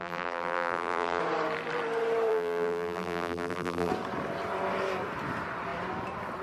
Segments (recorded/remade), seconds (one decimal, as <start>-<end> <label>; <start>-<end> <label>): 0.0-1.2 remade; 1.2-2.3 recorded; 2.3-3.9 remade; 3.9-6.4 recorded